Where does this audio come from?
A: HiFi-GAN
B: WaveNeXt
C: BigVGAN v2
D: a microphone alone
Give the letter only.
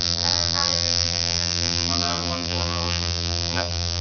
C